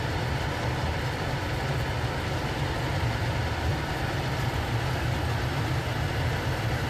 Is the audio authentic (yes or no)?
yes